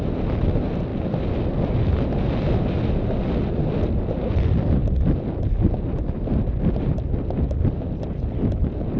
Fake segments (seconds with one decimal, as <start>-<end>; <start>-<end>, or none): none

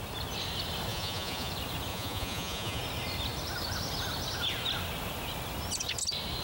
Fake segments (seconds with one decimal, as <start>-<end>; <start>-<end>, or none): 0.9-1.5; 1.9-2.8

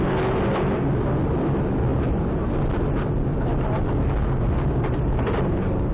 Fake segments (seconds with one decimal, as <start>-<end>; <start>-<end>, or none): none

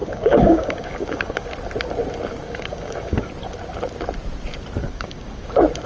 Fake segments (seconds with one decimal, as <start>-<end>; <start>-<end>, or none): 0.0-1.5; 2.3-3.3; 4.8-5.5

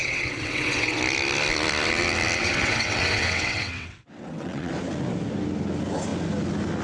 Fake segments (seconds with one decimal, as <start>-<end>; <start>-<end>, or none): 0.0-1.0; 2.4-4.7